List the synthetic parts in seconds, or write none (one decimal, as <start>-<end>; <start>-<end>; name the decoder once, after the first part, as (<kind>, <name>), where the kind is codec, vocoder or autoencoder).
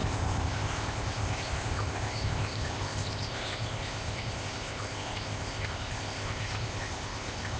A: 0.0-7.6 (codec, ZipCodec)